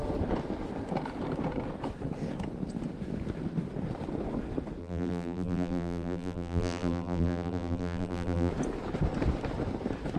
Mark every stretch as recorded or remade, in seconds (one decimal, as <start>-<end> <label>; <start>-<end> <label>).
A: 0.0-4.8 recorded; 4.8-8.5 remade; 8.5-10.2 recorded